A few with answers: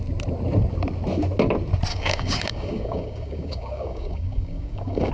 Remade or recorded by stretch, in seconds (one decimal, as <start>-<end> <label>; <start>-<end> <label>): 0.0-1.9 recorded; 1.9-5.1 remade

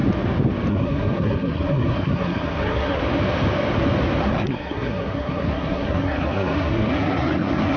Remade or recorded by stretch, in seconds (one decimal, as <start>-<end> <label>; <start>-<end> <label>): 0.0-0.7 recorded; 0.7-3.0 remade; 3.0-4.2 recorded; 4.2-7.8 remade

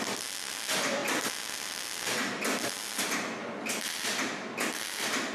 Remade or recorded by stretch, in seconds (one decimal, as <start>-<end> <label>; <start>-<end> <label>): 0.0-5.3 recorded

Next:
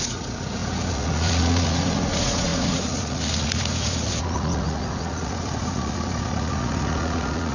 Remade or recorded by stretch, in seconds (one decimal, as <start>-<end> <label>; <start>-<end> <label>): 0.0-7.5 remade

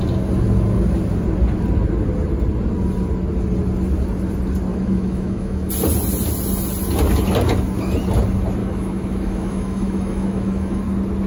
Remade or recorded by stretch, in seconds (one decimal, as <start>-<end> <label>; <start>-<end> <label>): 0.0-4.7 recorded; 4.7-5.7 remade; 5.7-8.6 recorded; 8.6-10.8 remade; 10.8-11.3 recorded

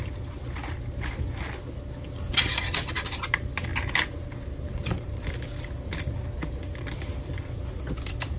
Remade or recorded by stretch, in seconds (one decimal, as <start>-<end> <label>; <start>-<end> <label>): 0.0-3.7 recorded; 3.7-5.3 remade; 5.3-6.6 recorded; 6.6-7.3 remade; 7.3-8.4 recorded